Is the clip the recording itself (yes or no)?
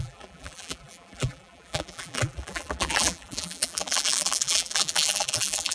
no